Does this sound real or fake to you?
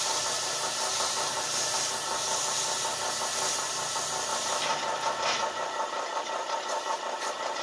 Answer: real